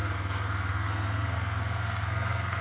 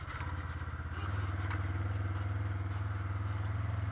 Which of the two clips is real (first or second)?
second